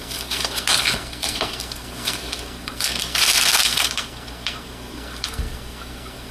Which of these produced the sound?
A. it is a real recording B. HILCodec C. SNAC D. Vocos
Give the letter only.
C